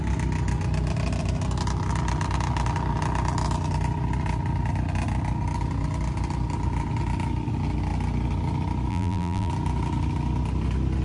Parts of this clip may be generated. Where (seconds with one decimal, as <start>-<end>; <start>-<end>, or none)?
8.9-9.5